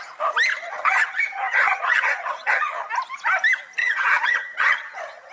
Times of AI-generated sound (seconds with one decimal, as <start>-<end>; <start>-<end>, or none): 0.5-2.9; 3.8-5.3